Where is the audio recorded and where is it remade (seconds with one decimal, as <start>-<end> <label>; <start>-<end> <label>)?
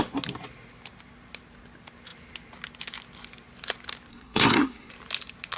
0.0-4.1 recorded; 4.1-4.9 remade; 4.9-5.6 recorded